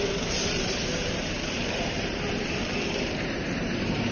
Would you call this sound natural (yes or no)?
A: no